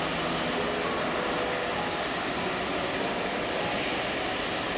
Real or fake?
real